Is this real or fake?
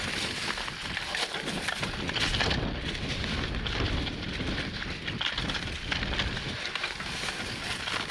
real